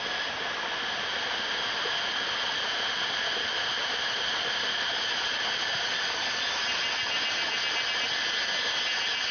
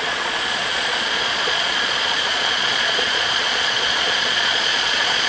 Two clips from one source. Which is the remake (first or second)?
second